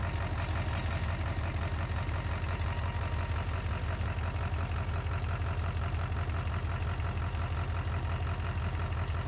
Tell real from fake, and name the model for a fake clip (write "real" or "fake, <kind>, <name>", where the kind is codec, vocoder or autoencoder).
real